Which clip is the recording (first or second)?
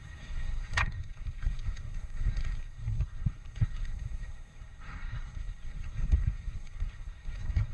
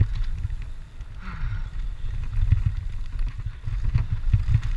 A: second